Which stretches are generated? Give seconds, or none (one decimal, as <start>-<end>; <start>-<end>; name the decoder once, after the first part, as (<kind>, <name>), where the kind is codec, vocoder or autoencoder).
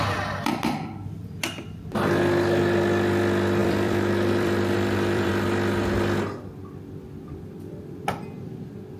3.6-5.3 (vocoder, BigVGAN v2)